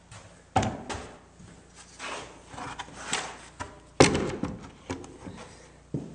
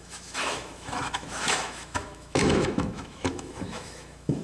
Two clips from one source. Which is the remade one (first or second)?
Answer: second